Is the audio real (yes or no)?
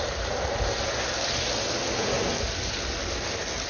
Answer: yes